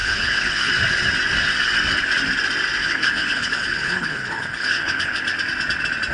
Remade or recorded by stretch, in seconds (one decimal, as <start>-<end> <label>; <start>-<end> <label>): 0.0-0.7 remade; 0.7-2.8 recorded; 2.8-5.2 remade; 5.2-6.1 recorded